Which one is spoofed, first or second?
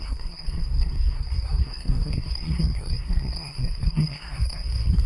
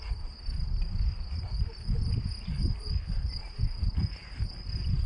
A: first